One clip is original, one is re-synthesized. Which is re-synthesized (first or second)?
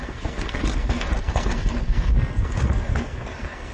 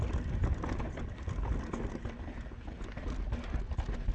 first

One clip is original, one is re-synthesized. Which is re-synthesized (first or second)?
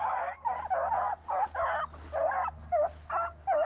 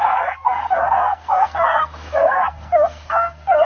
second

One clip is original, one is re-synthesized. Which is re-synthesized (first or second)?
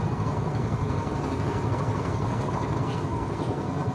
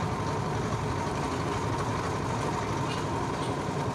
first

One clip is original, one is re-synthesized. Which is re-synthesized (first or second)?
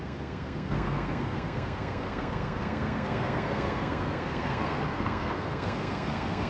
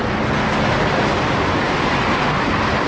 first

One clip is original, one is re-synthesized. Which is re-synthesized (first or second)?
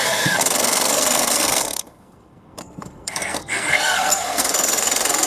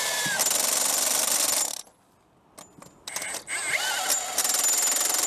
first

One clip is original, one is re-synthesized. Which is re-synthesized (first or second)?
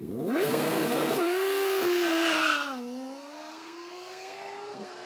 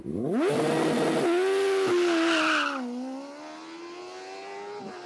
first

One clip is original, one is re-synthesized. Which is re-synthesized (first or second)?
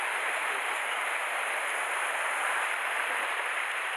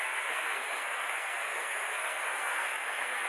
second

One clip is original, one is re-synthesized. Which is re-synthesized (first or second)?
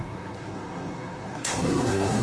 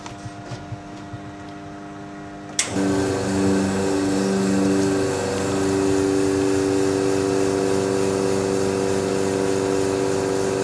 first